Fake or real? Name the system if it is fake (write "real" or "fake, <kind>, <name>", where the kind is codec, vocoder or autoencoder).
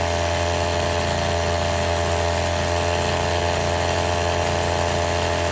real